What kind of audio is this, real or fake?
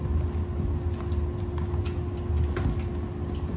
real